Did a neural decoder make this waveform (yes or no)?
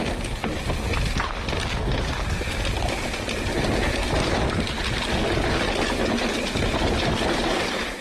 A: no